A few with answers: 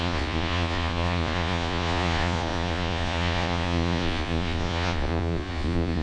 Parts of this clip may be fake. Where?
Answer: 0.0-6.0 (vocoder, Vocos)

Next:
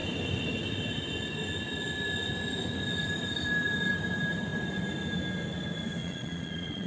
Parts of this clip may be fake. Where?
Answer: 6.0-6.9 (vocoder, Vocos)

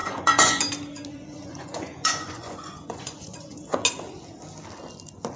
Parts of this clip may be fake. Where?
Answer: 0.0-0.6 (vocoder, Vocos); 1.1-3.8

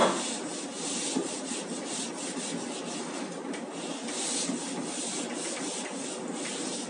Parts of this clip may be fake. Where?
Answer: none

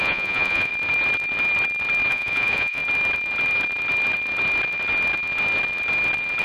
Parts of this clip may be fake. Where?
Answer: 0.0-0.7 (vocoder, Vocos); 2.1-2.8

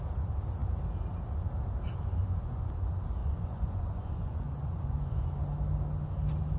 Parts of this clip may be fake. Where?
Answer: 2.2-2.7 (vocoder, Vocos); 3.2-5.4

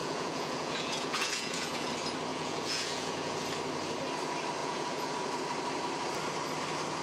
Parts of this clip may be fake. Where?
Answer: 0.0-1.9 (vocoder, Vocos); 2.3-3.4; 4.6-5.1